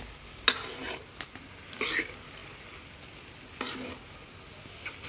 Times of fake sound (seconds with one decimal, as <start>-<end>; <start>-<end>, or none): none